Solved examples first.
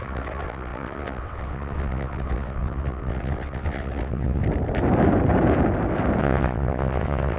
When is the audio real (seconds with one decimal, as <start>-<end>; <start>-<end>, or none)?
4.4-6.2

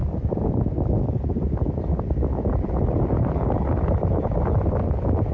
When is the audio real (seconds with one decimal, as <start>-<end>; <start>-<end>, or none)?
0.0-5.3

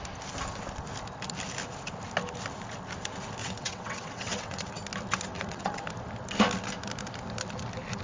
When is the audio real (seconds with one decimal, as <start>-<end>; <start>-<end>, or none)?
0.0-3.4; 4.8-5.3; 5.8-8.0